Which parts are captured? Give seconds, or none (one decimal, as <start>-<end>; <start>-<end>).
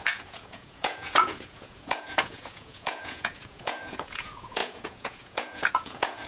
none